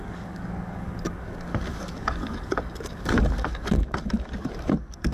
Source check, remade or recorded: remade